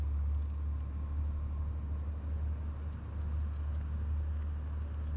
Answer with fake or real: real